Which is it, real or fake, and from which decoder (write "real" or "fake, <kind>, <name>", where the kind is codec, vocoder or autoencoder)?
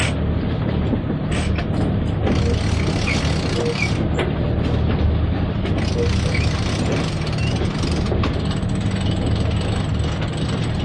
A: real